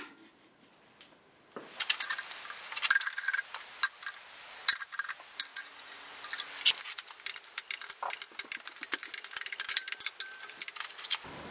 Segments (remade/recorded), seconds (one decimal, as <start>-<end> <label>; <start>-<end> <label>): 0.0-5.5 recorded; 5.5-6.2 remade; 6.2-11.5 recorded